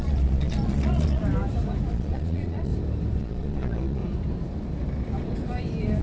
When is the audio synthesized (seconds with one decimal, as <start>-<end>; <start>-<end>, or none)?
0.0-1.2; 1.9-2.7; 3.2-4.0